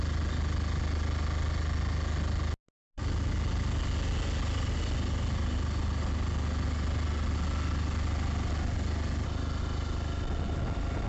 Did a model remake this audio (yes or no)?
no